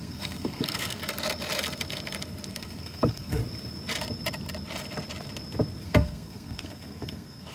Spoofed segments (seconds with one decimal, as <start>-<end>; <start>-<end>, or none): 0.0-1.0; 2.5-3.4; 5.8-7.5